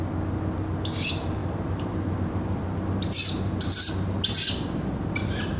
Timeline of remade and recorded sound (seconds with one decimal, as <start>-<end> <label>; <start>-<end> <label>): 0.0-1.4 recorded; 1.4-2.0 remade; 2.0-5.6 recorded